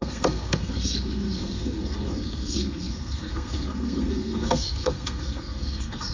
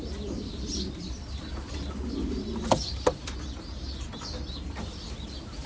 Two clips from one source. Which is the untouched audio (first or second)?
second